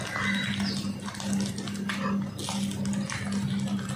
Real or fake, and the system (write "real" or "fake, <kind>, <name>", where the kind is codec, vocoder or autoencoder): real